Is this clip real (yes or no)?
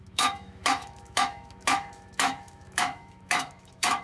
no